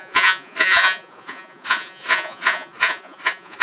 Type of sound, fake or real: fake